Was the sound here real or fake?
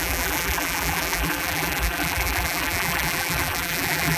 fake